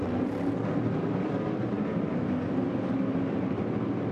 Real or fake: real